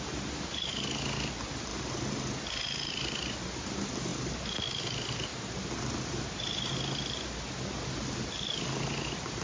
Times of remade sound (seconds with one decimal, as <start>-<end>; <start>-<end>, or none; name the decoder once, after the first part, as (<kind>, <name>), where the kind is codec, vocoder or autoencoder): none